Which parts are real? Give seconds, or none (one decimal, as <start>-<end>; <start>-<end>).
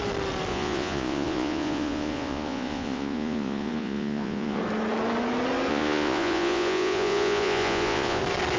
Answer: 0.0-0.5; 4.6-5.7; 8.2-8.6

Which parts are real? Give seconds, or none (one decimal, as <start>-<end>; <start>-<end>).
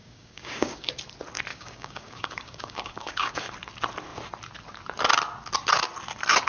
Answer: 0.9-1.5; 3.5-6.5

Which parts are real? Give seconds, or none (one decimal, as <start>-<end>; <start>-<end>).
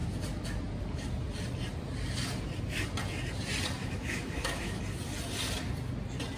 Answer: 0.0-3.8; 4.8-6.4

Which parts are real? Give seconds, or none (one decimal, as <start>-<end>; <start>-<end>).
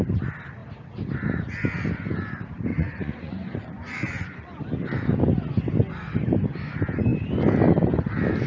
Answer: 0.0-2.7; 4.6-8.5